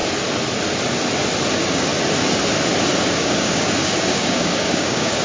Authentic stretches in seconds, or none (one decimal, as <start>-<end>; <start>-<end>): 0.0-1.5; 1.9-3.0